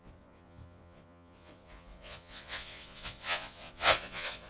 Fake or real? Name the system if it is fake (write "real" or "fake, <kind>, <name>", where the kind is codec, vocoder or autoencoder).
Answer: fake, vocoder, Vocos